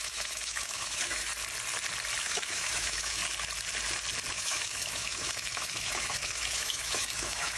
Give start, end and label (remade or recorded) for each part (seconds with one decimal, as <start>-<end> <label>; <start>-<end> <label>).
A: 0.0-1.3 remade; 1.3-2.2 recorded; 2.2-3.2 remade; 3.2-4.3 recorded; 4.3-7.6 remade